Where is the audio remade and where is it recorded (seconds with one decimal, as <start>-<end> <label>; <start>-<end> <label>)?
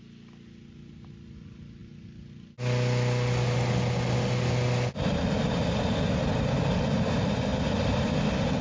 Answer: 0.0-8.6 recorded